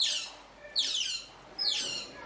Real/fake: real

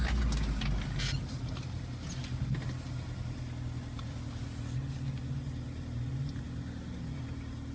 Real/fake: real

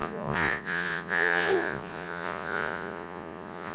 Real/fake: fake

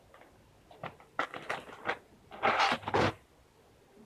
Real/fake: real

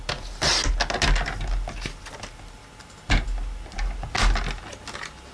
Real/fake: real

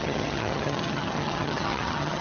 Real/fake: fake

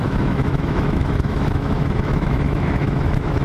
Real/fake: fake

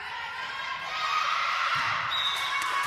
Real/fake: fake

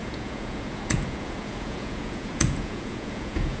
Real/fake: fake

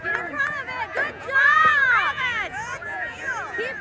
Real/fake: fake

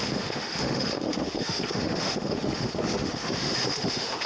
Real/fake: fake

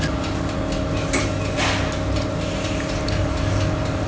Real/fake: real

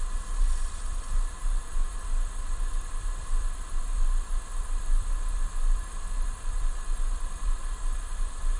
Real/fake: fake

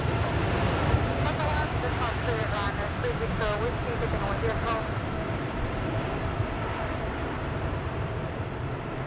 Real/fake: fake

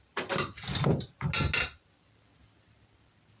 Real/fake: real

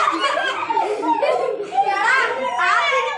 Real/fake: fake